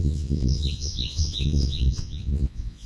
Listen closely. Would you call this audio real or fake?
fake